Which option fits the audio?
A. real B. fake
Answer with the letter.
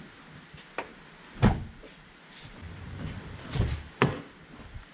A